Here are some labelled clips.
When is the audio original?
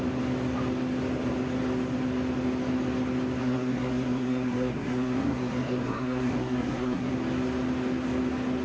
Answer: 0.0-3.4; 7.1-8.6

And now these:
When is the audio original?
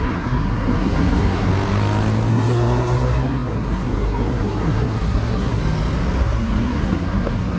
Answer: 1.5-2.3; 5.6-6.2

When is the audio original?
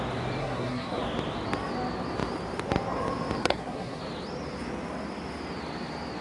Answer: 0.0-0.4; 1.0-3.4; 4.0-6.2